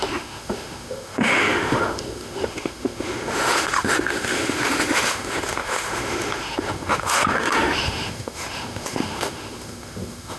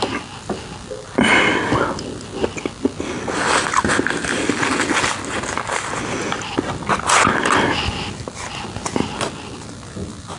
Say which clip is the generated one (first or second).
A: first